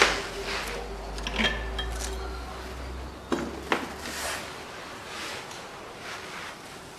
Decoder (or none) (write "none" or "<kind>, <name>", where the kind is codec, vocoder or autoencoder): none